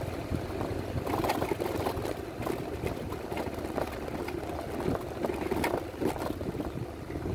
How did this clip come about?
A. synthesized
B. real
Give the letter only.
B